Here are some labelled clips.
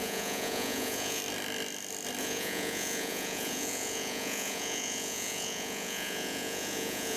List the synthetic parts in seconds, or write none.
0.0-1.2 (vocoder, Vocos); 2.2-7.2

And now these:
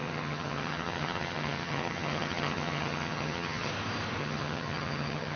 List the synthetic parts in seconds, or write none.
0.0-3.7 (vocoder, HiFi-GAN); 4.2-5.4

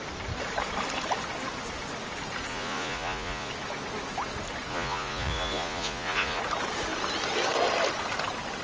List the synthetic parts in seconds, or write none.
2.5-3.5 (vocoder, Vocos); 4.7-6.4